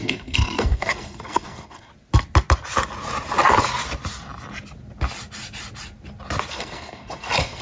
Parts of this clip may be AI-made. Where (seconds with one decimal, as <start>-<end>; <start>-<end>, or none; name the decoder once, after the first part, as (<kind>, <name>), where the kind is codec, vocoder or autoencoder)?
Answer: 0.0-1.9 (codec, SNAC); 6.5-7.6